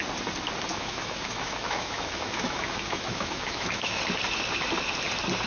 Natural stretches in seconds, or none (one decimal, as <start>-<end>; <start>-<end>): 0.0-0.7; 4.0-5.5